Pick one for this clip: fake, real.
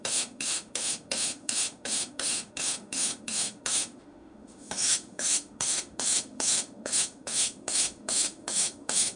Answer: fake